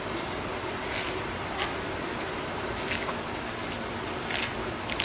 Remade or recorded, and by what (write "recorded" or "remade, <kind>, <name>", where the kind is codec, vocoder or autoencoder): recorded